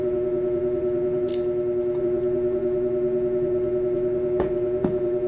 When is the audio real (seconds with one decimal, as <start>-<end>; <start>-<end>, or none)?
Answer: 1.3-2.0

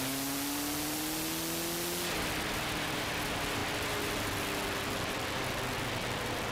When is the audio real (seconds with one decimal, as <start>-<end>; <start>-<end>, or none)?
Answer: 0.0-6.5

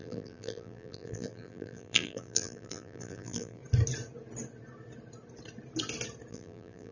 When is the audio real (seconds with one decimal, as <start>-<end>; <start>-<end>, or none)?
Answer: 3.6-6.3

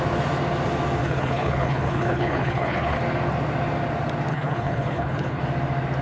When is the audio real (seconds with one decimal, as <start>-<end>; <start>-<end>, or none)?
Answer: 0.0-1.0; 3.0-4.3; 5.4-6.0

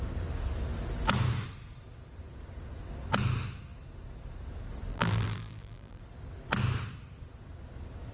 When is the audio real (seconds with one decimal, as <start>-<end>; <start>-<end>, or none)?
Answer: 0.0-4.9; 6.0-8.1